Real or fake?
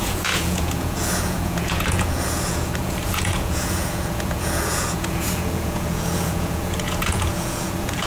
fake